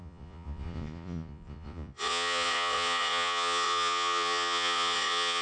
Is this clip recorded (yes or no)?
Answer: no